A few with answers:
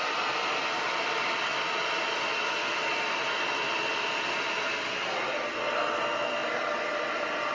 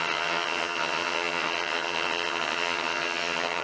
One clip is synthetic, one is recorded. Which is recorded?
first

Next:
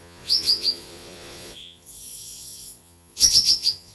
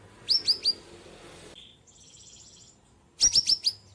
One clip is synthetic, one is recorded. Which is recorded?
second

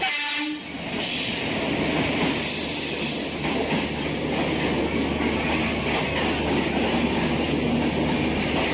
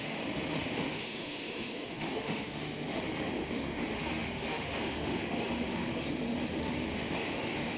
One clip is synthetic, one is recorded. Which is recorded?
first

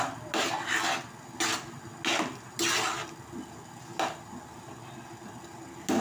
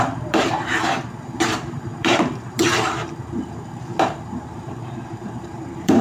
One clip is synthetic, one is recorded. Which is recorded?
first